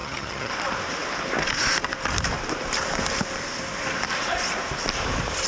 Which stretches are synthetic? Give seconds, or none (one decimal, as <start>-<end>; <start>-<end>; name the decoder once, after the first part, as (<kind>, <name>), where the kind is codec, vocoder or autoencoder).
0.0-0.5 (vocoder, HiFi-GAN)